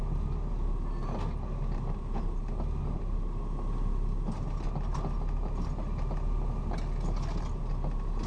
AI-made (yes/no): no